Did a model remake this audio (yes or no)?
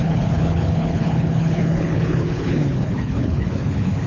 yes